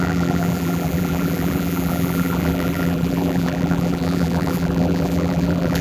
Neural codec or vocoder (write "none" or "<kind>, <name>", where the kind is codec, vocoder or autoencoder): vocoder, BigVGAN v2